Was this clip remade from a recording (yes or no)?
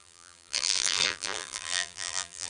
yes